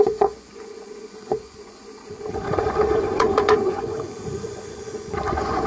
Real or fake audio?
fake